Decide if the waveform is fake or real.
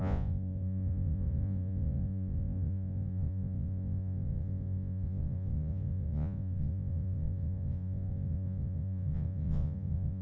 fake